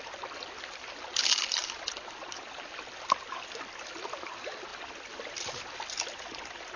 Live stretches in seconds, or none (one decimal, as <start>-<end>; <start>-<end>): 0.0-6.8